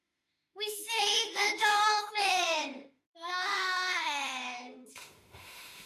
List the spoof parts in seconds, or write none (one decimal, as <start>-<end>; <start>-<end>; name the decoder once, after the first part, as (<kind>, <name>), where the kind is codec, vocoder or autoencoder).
0.0-5.9 (autoencoder, DAC-VAE)